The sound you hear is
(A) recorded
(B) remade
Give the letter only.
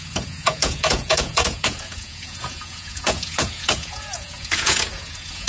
B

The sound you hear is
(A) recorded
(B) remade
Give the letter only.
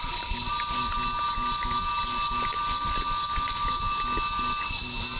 A